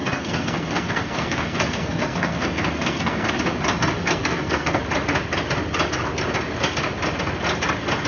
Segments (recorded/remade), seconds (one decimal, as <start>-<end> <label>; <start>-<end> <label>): 0.0-3.3 remade; 3.3-4.0 recorded; 4.0-4.8 remade; 4.8-8.1 recorded